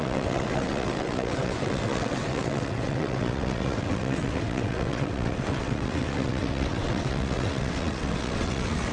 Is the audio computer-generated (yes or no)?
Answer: yes